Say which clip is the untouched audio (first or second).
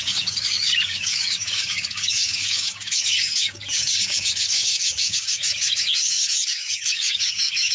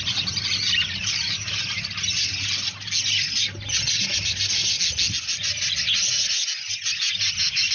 second